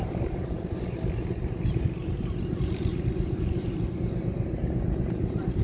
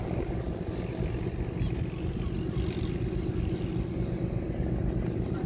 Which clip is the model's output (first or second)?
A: first